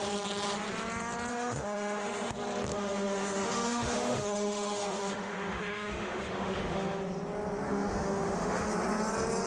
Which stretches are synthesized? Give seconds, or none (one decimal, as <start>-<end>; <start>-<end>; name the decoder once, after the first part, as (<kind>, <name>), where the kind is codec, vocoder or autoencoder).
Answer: 1.3-2.3 (autoencoder, DAC-VAE); 2.7-7.0; 7.7-8.7